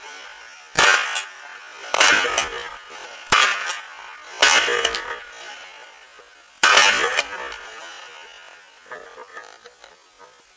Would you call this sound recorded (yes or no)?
yes